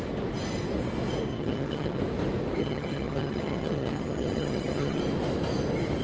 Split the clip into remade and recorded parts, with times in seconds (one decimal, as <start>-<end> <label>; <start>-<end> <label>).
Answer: 0.0-1.3 recorded; 1.3-2.0 remade; 2.0-2.6 recorded; 2.6-5.0 remade; 5.0-6.0 recorded